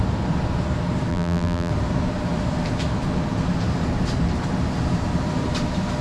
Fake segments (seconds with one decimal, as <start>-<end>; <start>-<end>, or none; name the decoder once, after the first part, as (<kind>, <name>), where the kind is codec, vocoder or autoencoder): 1.1-1.7 (vocoder, BigVGAN v2)